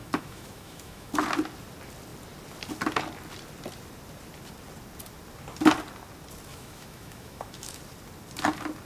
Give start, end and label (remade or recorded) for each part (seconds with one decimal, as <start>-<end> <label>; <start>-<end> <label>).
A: 0.0-1.1 remade; 1.1-6.5 recorded; 6.5-7.8 remade; 7.8-8.8 recorded